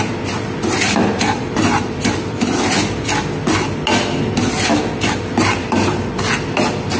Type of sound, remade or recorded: recorded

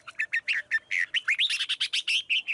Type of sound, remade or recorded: recorded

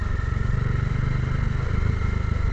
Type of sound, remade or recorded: recorded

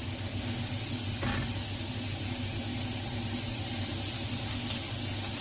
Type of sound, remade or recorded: recorded